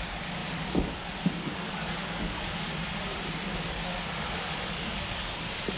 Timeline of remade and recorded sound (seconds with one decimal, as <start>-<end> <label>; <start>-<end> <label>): 0.0-2.7 remade; 2.7-3.7 recorded; 3.7-5.8 remade